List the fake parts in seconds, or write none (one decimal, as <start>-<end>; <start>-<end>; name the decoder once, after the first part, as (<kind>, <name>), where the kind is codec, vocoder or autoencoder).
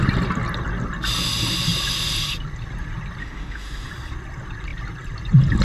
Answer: 3.2-3.9 (autoencoder, DAC-VAE)